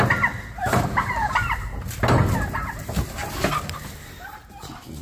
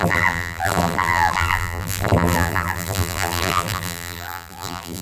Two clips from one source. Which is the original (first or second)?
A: first